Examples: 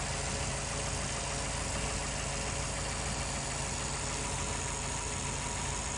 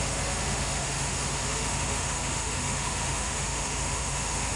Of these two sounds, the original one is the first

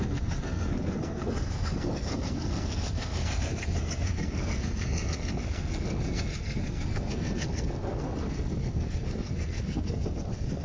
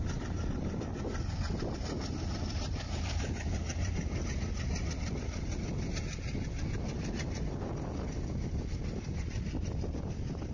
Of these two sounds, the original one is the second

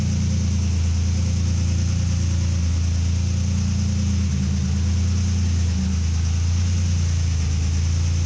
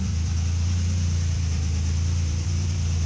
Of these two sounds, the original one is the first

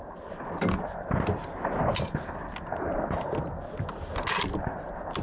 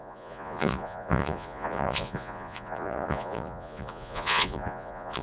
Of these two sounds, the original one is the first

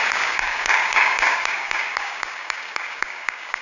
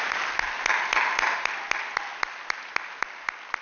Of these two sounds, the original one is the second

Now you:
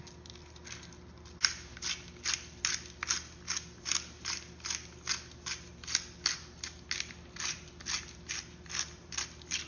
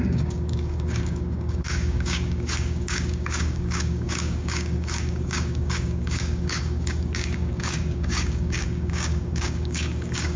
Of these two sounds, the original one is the first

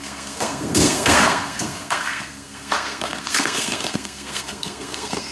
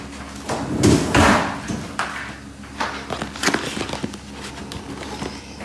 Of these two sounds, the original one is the second